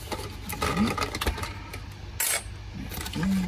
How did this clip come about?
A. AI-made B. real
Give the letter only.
B